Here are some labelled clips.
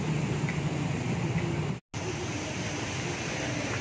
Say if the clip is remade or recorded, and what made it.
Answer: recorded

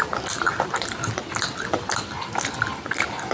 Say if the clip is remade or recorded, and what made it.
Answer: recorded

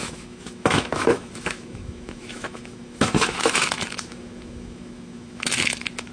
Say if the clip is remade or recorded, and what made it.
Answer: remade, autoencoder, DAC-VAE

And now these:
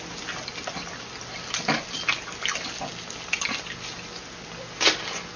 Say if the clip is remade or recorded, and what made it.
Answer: recorded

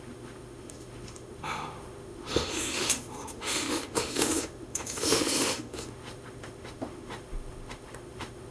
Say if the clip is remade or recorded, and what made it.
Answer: remade, autoencoder, DAC-VAE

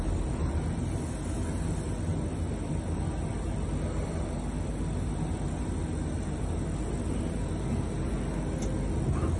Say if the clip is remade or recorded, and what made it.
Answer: recorded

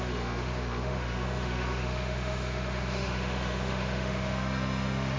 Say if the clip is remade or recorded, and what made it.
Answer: remade, autoencoder, DAC-VAE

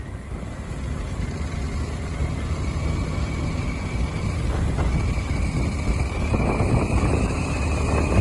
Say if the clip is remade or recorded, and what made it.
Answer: recorded